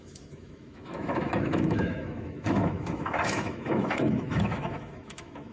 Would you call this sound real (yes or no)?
no